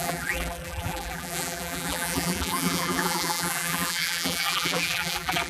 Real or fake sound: fake